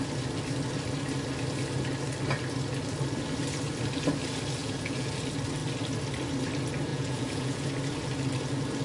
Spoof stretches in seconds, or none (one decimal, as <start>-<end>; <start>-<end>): 4.6-5.1; 6.9-7.7